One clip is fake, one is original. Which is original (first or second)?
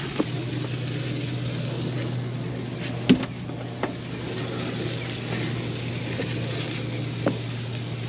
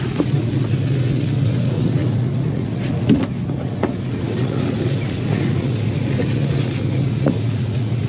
first